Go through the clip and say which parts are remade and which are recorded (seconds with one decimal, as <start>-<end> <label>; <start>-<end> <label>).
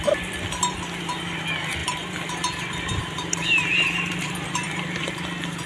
0.0-1.8 recorded; 1.8-5.2 remade; 5.2-5.7 recorded